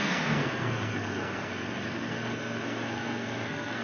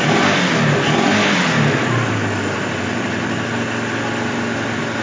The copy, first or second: first